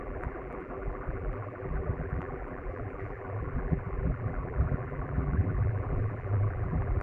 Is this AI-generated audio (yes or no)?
yes